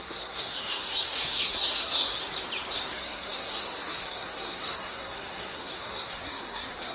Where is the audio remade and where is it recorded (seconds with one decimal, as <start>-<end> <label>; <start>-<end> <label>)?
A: 0.0-2.2 remade; 2.2-2.9 recorded; 2.9-6.9 remade